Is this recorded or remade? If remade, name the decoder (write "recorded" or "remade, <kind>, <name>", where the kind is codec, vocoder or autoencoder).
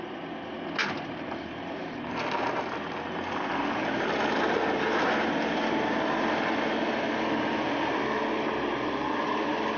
recorded